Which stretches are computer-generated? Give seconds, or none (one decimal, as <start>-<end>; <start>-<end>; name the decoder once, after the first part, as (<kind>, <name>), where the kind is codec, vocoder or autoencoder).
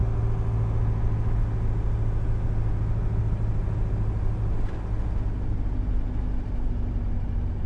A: none